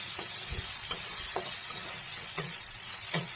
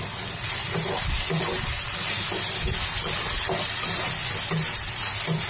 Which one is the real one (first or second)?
second